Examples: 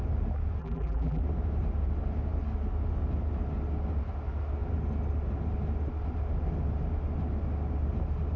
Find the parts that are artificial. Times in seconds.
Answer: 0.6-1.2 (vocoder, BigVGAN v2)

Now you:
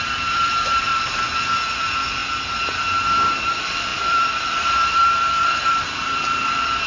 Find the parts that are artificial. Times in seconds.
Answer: 0.0-0.9 (vocoder, BigVGAN v2); 1.8-2.2; 3.4-6.9

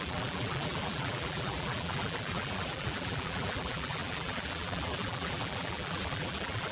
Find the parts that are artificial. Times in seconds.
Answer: 0.0-6.7 (vocoder, BigVGAN v2)

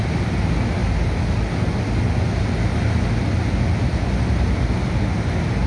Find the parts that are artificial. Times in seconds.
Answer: none

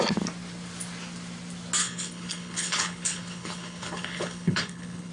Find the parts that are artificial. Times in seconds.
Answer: 1.8-5.1 (codec, HILCodec)